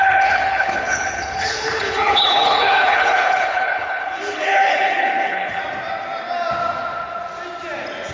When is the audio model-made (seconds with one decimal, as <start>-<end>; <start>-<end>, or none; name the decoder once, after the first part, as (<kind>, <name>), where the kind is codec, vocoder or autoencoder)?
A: 0.0-5.6 (codec, HILCodec)